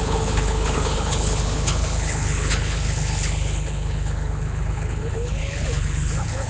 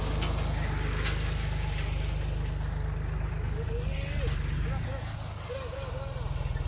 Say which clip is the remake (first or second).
first